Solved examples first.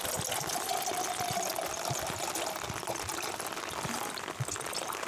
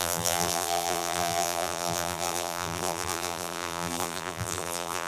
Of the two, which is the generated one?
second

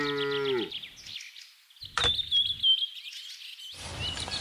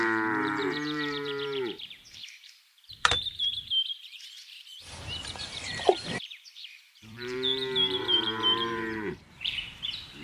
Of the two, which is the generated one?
second